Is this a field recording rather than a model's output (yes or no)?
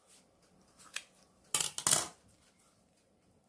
yes